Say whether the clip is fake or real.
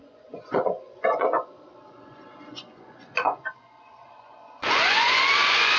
fake